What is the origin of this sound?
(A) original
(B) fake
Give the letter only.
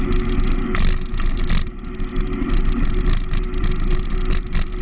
A